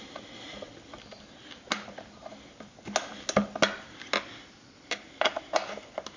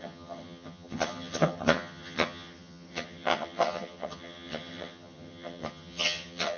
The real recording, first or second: first